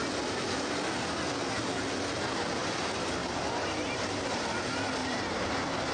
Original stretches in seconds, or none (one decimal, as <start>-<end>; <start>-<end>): 0.0-3.2; 4.2-5.0; 5.5-5.9